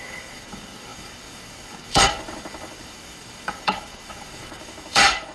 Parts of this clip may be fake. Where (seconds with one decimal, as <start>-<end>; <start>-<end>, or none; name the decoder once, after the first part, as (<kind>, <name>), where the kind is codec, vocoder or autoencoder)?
0.0-5.3 (codec, DAC)